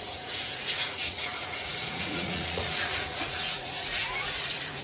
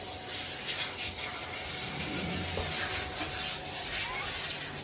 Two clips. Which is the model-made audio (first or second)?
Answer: first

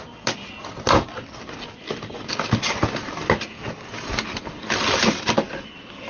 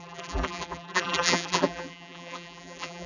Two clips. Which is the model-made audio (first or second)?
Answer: second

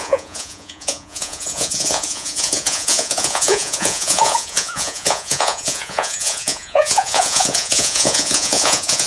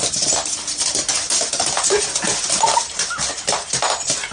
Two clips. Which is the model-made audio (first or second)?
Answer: first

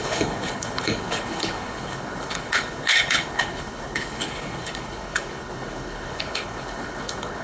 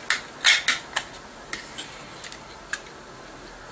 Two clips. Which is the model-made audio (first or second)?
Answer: first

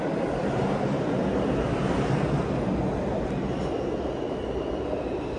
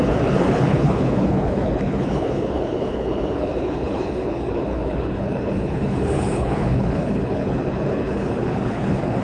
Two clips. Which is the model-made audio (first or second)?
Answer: second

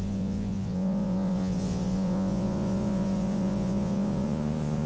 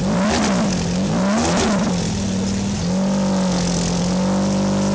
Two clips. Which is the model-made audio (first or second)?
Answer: first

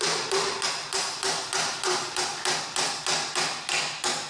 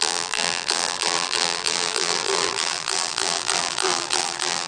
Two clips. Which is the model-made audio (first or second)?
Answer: second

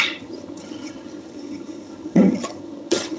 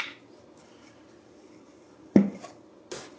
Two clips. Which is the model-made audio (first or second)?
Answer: first